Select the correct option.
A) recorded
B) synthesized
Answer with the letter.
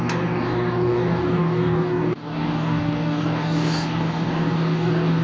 B